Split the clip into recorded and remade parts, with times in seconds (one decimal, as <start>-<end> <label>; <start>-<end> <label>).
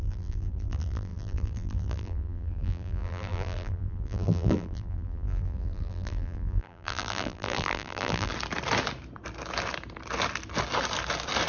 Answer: 0.0-8.3 remade; 8.3-11.5 recorded